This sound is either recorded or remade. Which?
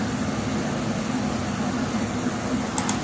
recorded